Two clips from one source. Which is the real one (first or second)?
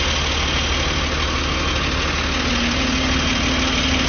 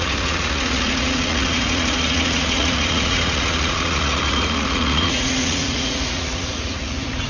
first